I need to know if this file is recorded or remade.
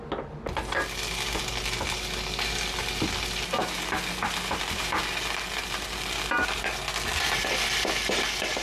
recorded